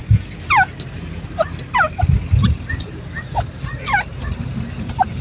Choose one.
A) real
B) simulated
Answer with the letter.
A